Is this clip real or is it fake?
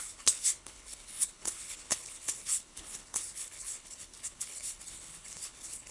fake